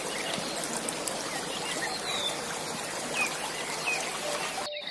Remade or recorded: recorded